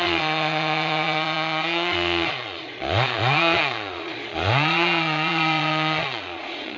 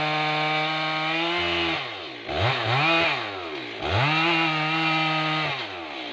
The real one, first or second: second